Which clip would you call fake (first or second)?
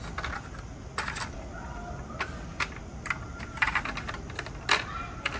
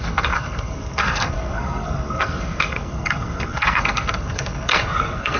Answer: second